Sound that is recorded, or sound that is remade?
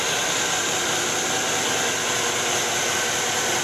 recorded